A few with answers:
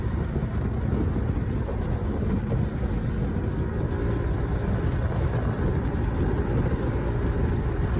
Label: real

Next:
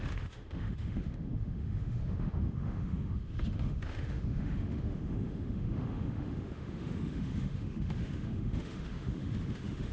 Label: fake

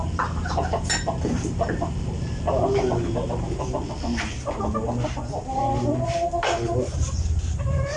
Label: real